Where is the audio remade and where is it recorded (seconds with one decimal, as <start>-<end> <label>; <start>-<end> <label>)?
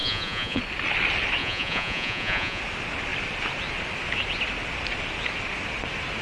0.0-0.6 remade; 0.6-1.4 recorded; 1.4-2.6 remade; 2.6-6.2 recorded